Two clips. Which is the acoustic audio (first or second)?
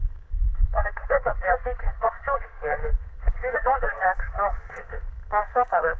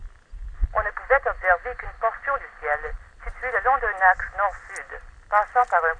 second